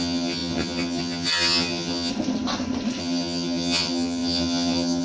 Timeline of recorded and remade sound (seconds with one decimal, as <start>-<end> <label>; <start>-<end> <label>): 0.0-2.1 remade; 2.1-3.0 recorded; 3.0-5.0 remade